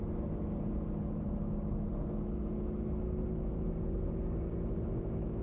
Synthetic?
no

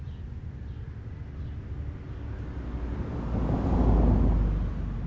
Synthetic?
no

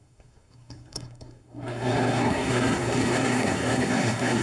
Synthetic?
yes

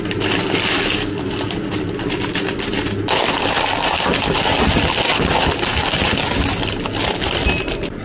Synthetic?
no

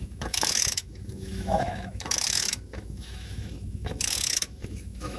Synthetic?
yes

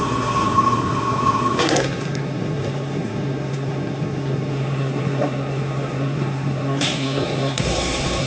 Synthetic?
yes